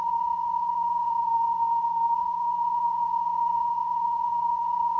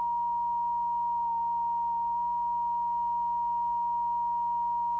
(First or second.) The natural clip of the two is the second